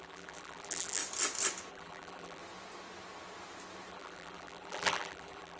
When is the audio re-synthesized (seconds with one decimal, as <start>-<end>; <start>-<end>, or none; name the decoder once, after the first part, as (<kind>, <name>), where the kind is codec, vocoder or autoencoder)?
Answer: 0.0-1.0 (vocoder, BigVGAN v2); 1.7-2.4; 3.9-5.6